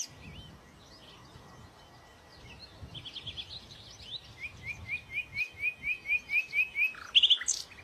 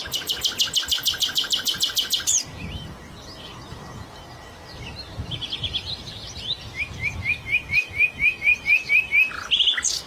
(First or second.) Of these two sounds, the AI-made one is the second